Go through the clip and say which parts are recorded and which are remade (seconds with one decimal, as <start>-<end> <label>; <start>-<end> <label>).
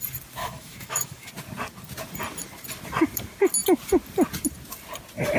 0.0-0.4 recorded; 0.4-1.3 remade; 1.3-5.4 recorded